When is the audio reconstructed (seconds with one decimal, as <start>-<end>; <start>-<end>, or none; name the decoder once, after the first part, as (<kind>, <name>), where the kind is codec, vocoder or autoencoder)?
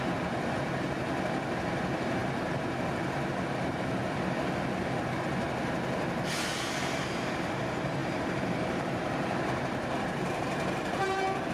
8.0-11.5 (vocoder, BigVGAN v2)